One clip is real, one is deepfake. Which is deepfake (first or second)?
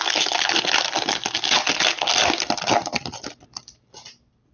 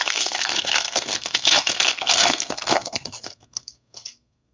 second